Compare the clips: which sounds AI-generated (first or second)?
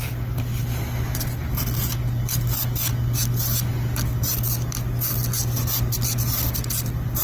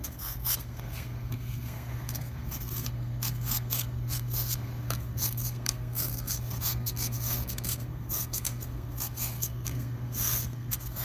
second